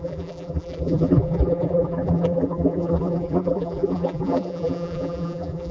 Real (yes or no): no